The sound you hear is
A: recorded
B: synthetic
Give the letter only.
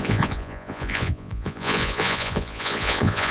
B